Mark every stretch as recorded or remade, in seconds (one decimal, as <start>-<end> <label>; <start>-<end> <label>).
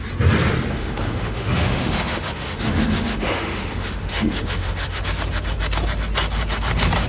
0.0-0.7 recorded; 0.7-5.0 remade; 5.0-7.1 recorded